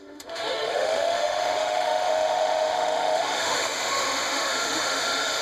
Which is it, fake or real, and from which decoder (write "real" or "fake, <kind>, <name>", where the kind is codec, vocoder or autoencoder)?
fake, autoencoder, DAC-VAE